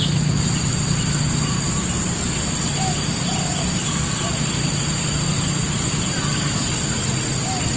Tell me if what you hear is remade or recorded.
recorded